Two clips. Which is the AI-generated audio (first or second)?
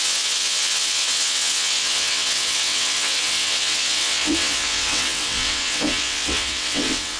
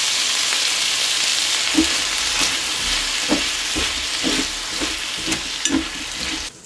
first